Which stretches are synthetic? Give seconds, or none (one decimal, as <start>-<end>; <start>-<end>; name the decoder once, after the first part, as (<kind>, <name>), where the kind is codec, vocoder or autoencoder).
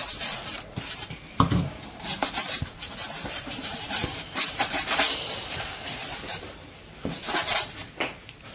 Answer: 0.0-2.8 (vocoder, BigVGAN v2); 3.4-8.5